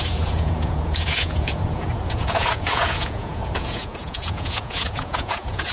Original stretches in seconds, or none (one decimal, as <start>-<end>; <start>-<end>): none

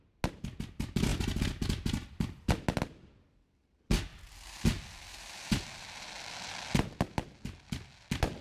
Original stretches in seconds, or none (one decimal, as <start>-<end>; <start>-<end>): 0.0-8.4